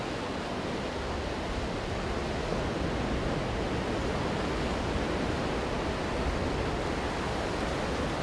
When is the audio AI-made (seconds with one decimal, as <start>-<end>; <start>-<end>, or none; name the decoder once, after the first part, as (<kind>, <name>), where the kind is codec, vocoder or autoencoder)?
none